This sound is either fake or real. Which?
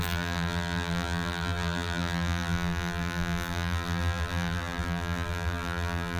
fake